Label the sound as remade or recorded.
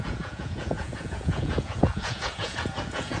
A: remade